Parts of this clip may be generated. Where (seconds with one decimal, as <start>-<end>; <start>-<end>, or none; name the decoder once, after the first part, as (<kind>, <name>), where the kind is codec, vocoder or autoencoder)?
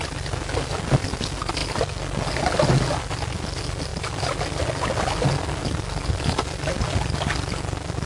none